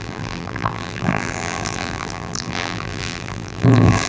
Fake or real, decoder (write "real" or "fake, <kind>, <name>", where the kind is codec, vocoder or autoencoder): fake, vocoder, BigVGAN v2